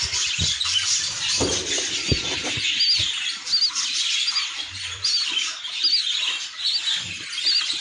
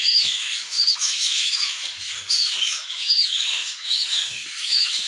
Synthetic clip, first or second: second